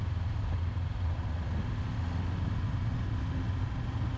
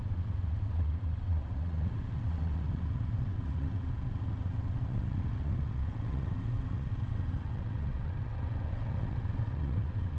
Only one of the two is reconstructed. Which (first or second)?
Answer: second